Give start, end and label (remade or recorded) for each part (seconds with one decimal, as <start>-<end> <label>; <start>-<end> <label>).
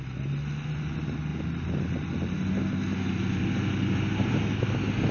0.0-5.1 recorded